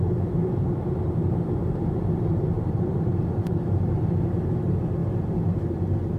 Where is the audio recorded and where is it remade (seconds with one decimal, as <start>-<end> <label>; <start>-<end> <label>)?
0.0-0.4 recorded; 0.4-4.1 remade; 4.1-5.0 recorded; 5.0-5.7 remade; 5.7-6.2 recorded